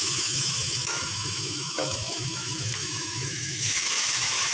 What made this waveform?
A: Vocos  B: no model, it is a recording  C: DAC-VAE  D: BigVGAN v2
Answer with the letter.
C